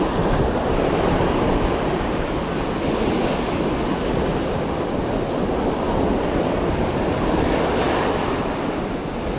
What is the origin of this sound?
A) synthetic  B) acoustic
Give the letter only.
B